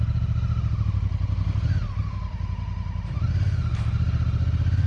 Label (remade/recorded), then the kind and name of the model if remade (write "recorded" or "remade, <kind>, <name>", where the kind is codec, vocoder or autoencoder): recorded